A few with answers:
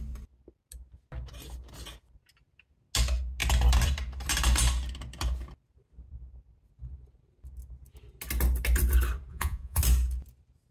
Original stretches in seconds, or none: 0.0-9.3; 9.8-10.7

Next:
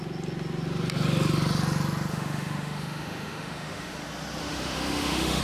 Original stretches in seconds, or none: 0.0-2.1; 4.0-4.4

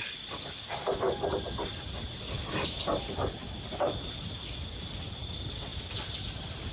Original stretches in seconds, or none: 0.0-6.7

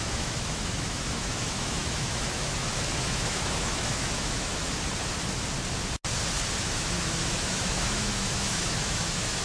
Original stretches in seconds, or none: 4.5-6.6

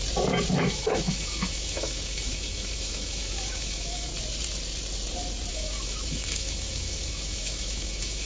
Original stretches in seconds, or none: 0.0-0.6; 4.1-5.5

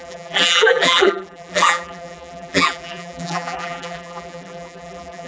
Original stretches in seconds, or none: none

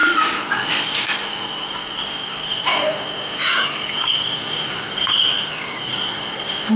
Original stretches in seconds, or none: 2.7-4.5

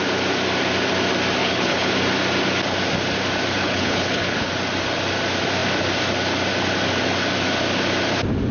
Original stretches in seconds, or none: 0.0-1.4; 1.9-3.6; 4.5-8.5